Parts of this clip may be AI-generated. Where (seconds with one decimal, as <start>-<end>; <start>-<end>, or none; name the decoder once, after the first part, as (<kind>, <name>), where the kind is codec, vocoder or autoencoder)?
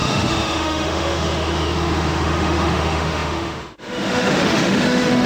0.0-5.3 (autoencoder, DAC-VAE)